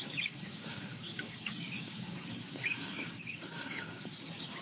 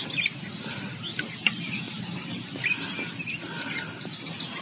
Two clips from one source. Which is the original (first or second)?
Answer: second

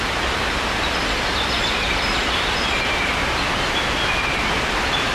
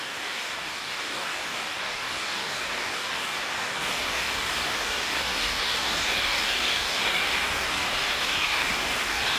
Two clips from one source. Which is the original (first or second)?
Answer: first